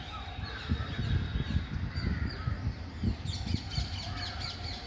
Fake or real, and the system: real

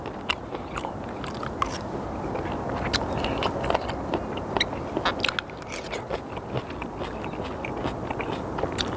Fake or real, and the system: real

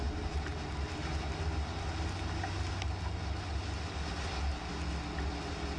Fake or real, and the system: real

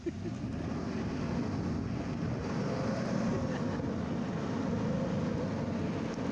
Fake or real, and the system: real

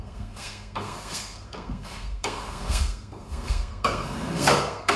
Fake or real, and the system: fake, codec, SNAC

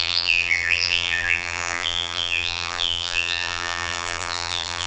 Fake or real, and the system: fake, vocoder, BigVGAN v2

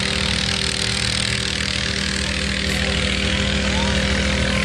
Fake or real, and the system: real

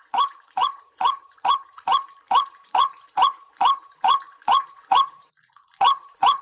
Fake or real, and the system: fake, vocoder, Vocos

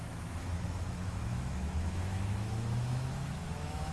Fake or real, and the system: fake, autoencoder, DAC-VAE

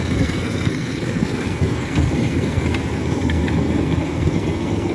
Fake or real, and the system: fake, codec, SNAC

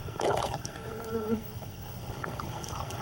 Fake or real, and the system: fake, codec, SNAC